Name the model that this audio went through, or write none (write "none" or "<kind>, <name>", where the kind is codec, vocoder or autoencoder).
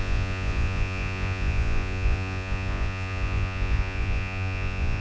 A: vocoder, Vocos